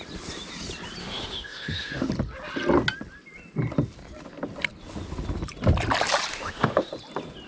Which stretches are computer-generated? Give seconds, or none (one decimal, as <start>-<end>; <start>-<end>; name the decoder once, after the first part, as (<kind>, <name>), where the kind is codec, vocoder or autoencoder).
1.0-2.1 (autoencoder, DAC-VAE); 6.3-6.9